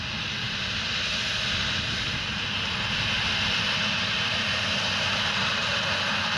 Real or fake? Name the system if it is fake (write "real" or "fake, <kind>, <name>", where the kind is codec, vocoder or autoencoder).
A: real